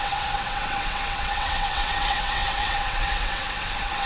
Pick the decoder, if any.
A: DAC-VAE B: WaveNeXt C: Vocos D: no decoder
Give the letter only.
B